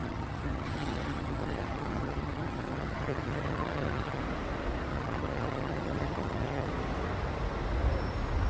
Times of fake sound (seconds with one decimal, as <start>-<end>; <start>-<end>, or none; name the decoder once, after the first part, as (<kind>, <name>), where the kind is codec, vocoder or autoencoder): 0.0-4.2 (vocoder, HiFi-GAN); 4.9-6.7